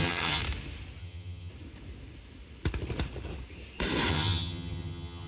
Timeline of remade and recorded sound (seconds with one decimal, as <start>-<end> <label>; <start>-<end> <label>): 0.0-0.4 remade; 0.4-1.0 recorded; 1.0-1.5 remade; 1.5-4.1 recorded; 4.1-5.3 remade